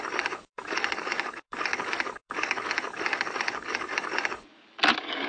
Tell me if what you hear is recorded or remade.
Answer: remade